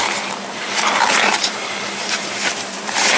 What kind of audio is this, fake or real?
fake